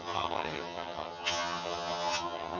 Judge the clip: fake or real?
fake